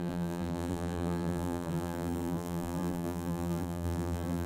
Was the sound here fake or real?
fake